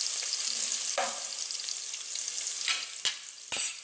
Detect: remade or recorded recorded